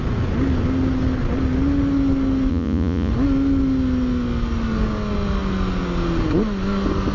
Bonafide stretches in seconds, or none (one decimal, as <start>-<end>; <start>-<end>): 0.0-2.5; 3.1-7.1